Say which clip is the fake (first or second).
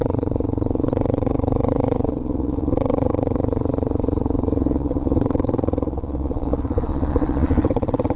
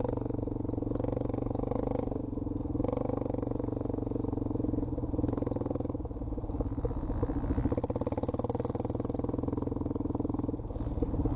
first